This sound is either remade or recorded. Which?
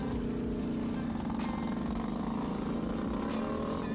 recorded